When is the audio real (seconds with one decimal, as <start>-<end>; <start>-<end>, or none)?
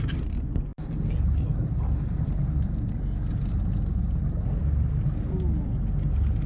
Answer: 0.0-6.5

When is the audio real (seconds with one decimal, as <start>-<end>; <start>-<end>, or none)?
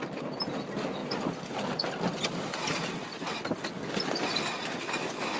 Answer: 0.0-5.4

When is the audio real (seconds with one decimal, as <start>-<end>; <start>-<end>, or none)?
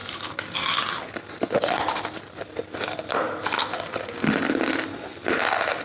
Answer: 0.0-5.8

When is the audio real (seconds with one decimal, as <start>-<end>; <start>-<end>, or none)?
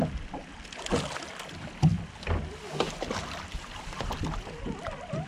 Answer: 0.0-5.3